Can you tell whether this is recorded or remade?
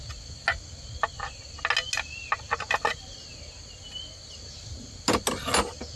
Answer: recorded